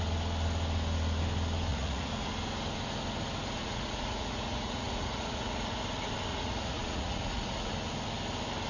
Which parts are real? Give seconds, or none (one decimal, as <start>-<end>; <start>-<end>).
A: 0.0-1.7; 2.3-3.6; 5.8-6.3; 7.7-8.7